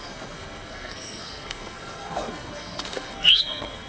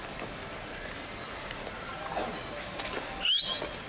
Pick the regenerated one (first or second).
first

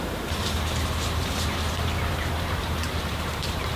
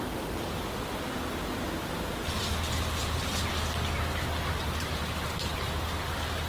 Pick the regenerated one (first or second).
first